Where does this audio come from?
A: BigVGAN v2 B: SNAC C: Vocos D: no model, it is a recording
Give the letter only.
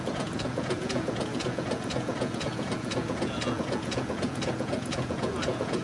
C